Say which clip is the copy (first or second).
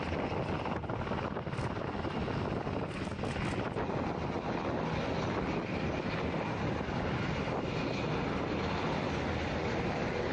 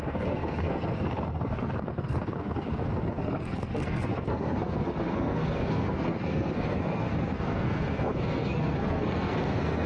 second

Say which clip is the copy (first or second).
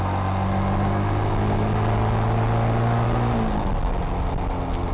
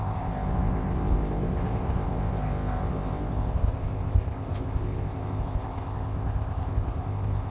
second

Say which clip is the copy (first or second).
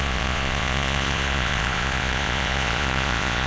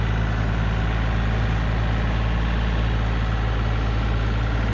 first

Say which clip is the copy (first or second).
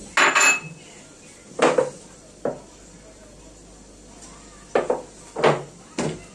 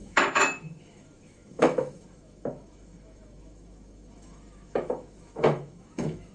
second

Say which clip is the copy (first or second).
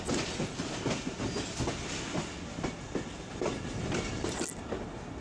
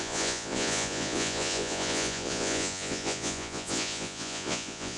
second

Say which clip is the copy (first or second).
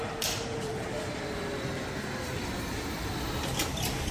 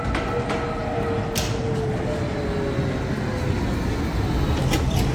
first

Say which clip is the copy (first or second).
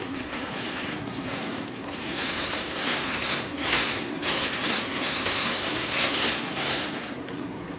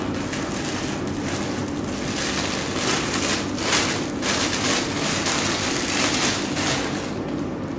first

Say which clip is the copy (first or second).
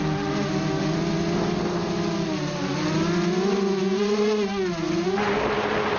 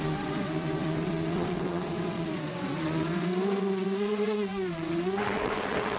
second